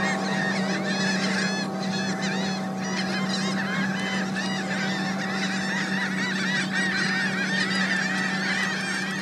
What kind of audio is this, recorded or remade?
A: recorded